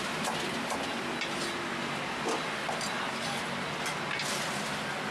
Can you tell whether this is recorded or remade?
recorded